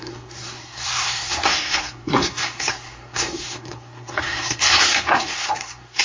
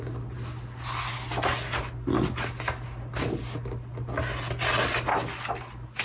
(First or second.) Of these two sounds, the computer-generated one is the first